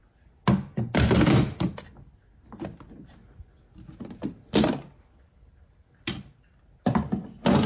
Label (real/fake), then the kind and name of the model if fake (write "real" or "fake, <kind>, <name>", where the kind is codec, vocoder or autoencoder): real